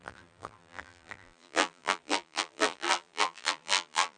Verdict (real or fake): fake